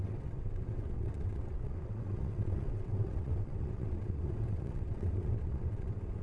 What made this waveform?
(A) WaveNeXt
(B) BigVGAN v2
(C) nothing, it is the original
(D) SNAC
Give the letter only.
A